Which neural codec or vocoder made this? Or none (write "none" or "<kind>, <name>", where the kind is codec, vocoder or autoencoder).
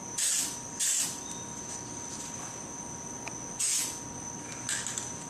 none